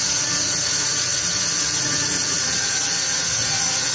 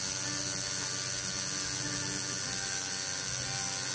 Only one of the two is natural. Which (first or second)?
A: second